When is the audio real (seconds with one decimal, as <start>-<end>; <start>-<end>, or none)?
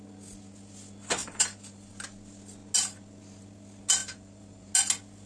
0.0-1.2; 1.9-4.0; 4.7-5.3